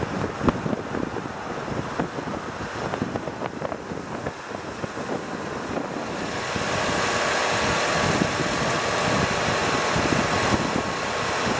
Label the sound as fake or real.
real